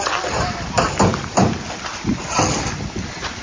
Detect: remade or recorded recorded